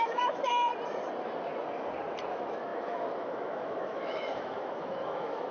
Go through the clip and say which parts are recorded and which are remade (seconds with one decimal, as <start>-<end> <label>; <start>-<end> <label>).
0.0-0.7 remade; 0.7-2.3 recorded; 2.3-5.5 remade